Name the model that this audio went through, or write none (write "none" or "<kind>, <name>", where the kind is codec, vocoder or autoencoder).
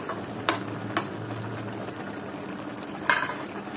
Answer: none